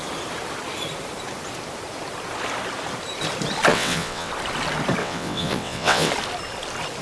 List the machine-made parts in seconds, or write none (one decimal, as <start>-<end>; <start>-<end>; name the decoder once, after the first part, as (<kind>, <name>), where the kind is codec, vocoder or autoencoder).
3.7-4.3 (vocoder, WaveNeXt); 5.0-6.1